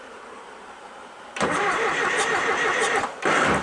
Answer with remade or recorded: remade